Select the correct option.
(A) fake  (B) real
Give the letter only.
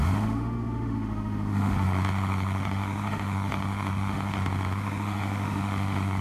A